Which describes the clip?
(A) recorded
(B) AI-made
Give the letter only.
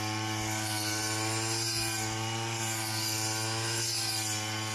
A